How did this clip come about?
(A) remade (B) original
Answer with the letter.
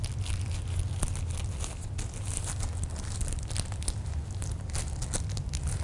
B